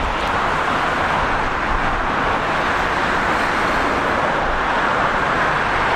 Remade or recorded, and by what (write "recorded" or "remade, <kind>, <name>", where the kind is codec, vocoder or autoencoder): recorded